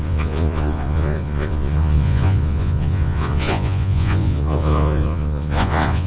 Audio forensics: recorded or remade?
remade